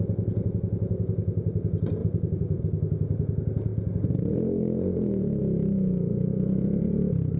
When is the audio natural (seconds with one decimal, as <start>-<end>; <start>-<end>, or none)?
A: 0.0-2.0; 2.6-6.3; 7.0-7.4